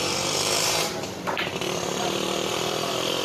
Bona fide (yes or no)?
no